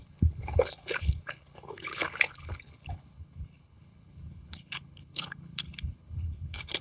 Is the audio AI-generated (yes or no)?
yes